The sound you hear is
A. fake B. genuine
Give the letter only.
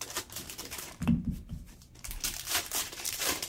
A